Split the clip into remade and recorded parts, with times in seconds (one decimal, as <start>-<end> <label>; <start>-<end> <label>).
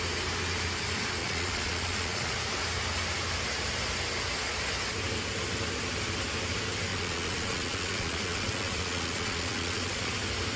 0.0-1.2 recorded; 1.2-2.3 remade; 2.3-6.9 recorded; 6.9-10.1 remade; 10.1-10.6 recorded